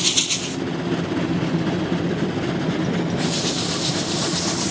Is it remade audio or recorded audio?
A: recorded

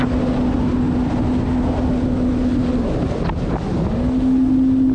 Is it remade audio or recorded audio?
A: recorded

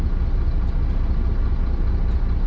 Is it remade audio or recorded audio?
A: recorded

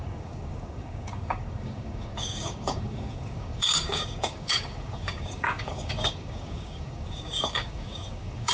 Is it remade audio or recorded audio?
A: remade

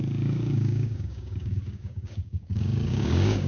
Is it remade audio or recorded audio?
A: remade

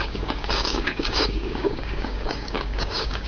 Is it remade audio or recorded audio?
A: remade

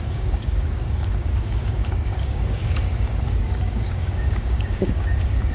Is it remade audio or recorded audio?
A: remade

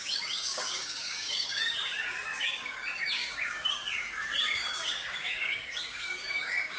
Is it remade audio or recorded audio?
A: remade